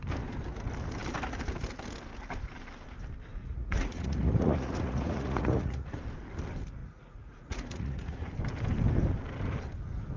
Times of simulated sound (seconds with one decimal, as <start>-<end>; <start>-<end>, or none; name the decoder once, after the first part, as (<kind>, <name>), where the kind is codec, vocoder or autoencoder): 3.4-6.0 (vocoder, Vocos); 6.8-8.3